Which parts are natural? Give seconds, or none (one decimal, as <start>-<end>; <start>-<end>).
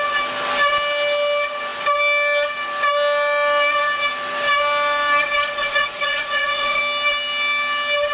0.0-5.6; 6.8-8.1